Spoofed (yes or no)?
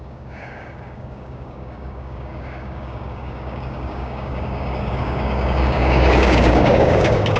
yes